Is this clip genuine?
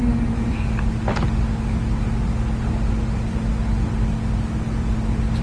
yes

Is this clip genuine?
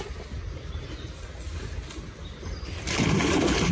yes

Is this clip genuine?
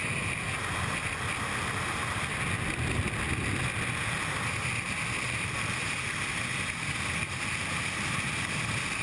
yes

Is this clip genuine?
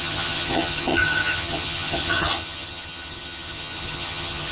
no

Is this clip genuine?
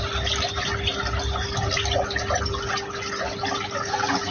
yes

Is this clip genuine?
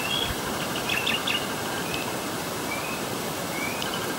yes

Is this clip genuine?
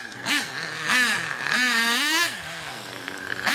no